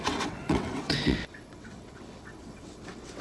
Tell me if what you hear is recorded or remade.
remade